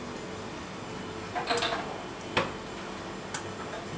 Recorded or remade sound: recorded